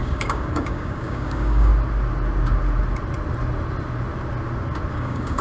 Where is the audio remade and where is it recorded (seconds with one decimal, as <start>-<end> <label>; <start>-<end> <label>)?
0.0-1.7 remade; 1.7-4.9 recorded; 4.9-5.4 remade